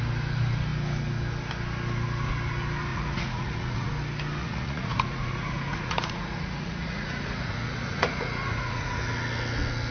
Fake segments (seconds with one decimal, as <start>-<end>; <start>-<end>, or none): 2.9-3.9; 4.4-9.0